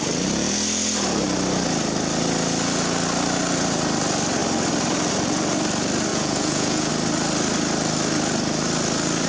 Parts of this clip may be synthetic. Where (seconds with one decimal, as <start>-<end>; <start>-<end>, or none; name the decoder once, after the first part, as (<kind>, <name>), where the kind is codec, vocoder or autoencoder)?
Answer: 6.1-6.9 (vocoder, Vocos)